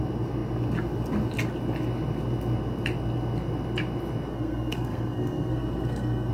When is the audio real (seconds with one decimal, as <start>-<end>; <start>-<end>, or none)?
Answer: 0.0-4.3